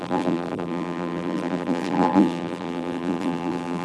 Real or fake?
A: fake